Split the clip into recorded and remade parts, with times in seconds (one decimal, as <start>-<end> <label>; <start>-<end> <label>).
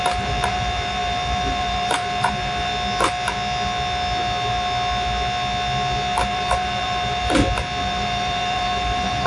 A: 0.0-2.7 remade; 2.7-6.3 recorded; 6.3-7.2 remade; 7.2-7.8 recorded; 7.8-9.3 remade